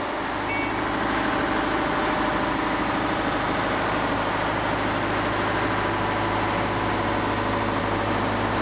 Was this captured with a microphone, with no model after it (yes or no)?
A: yes